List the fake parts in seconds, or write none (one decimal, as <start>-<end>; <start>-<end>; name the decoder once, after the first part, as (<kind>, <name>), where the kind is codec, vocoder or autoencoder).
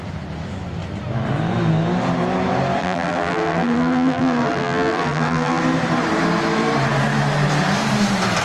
2.8-5.6 (vocoder, BigVGAN v2)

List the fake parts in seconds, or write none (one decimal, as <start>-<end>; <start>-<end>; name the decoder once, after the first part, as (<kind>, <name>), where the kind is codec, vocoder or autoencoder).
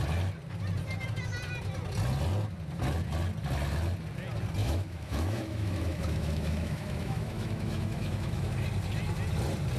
4.6-8.5 (autoencoder, DAC-VAE)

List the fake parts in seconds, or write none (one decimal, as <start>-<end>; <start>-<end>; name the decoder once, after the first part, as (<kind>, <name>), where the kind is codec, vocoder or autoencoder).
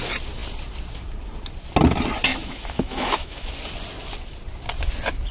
2.3-3.5 (autoencoder, DAC-VAE)